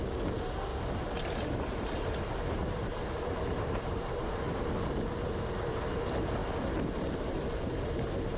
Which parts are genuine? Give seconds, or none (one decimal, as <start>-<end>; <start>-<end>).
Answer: 0.0-0.7; 4.6-8.4